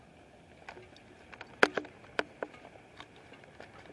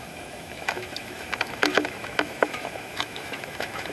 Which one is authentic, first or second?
first